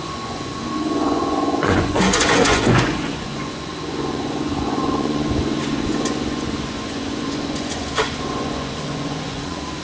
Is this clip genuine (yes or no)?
no